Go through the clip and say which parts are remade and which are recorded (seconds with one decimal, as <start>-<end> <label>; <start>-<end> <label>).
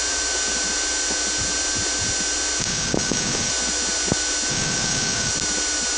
0.0-2.6 recorded; 2.6-3.5 remade; 3.5-4.5 recorded; 4.5-5.3 remade; 5.3-6.0 recorded